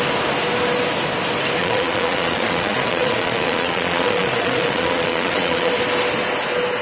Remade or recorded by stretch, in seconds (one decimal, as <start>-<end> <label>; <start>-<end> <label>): 0.0-1.6 recorded; 1.6-5.7 remade; 5.7-6.8 recorded